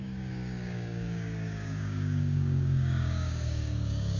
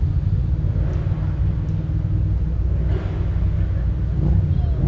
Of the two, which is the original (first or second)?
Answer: second